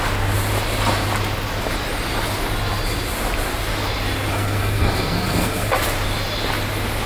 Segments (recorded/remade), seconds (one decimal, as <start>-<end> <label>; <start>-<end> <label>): 0.0-4.3 recorded; 4.3-5.7 remade; 5.7-7.1 recorded